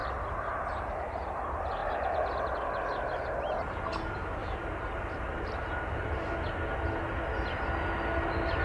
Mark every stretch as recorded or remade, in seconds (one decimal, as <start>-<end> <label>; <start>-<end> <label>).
0.0-1.3 remade; 1.3-1.8 recorded; 1.8-2.4 remade; 2.4-4.4 recorded; 4.4-6.5 remade; 6.5-8.6 recorded